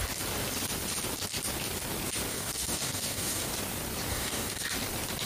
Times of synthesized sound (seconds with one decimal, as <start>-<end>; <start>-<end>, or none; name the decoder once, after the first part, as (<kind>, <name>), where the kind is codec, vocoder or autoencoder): 2.3-3.5 (codec, DAC); 4.1-4.6